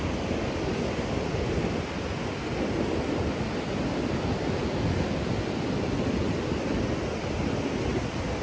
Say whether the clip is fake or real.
real